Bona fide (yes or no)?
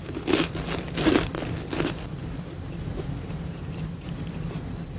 no